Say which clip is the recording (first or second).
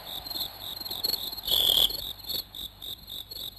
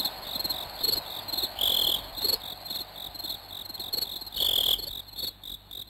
second